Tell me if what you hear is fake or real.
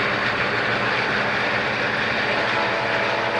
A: real